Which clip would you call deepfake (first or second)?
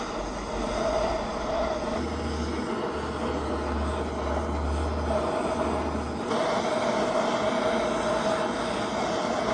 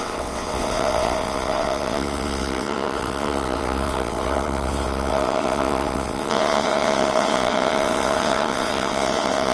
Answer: second